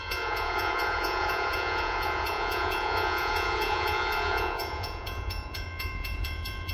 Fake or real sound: fake